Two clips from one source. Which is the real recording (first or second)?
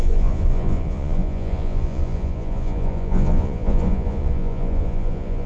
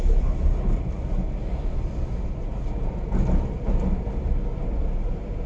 second